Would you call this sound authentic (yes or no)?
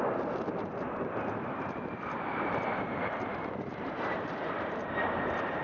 no